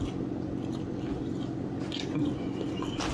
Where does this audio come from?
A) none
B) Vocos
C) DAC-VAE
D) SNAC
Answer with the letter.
A